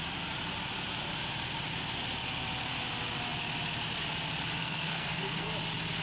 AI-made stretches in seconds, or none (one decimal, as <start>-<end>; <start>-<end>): 4.6-5.5